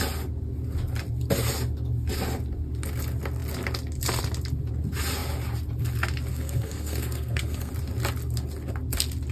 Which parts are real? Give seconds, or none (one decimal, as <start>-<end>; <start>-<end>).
0.0-6.3; 7.7-9.3